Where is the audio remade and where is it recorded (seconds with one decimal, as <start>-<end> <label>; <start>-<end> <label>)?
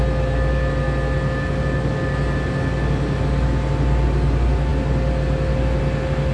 0.0-6.3 recorded